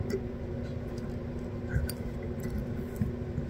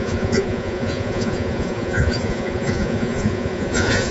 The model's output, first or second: second